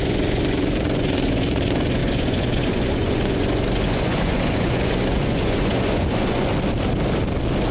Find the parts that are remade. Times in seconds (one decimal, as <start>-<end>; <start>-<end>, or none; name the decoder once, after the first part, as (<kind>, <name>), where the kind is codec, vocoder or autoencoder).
0.0-6.5 (vocoder, Vocos)